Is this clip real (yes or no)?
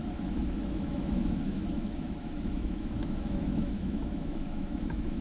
no